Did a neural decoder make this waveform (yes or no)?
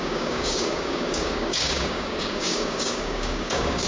yes